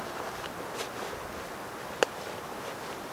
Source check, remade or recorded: recorded